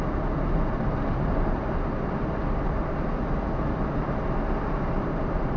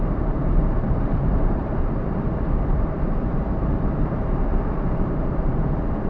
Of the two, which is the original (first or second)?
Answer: first